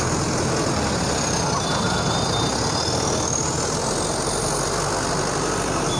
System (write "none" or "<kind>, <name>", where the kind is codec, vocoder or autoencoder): none